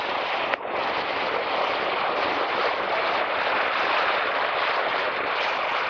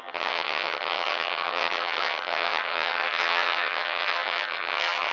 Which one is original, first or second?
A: first